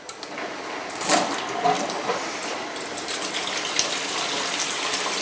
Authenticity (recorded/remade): recorded